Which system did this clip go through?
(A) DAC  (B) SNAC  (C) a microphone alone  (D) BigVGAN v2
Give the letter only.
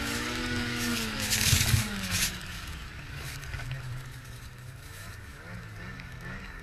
A